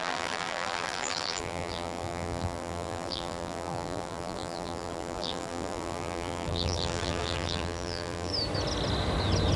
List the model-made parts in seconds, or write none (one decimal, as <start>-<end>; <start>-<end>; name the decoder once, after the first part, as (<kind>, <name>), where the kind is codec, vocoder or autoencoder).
0.0-8.3 (vocoder, BigVGAN v2)

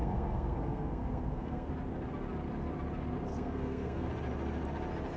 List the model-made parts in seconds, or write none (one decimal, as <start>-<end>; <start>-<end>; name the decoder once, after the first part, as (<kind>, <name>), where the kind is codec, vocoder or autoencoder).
0.0-1.7 (codec, SNAC); 3.3-4.1

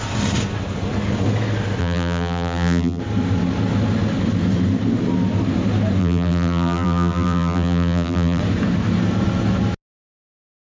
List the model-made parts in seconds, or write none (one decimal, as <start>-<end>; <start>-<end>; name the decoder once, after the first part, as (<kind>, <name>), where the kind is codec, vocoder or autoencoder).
1.8-3.0 (vocoder, BigVGAN v2); 6.0-8.4

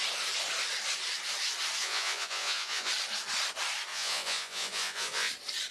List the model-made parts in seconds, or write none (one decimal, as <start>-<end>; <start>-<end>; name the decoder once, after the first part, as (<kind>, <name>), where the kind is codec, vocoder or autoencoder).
1.8-2.9 (vocoder, Vocos); 3.9-5.3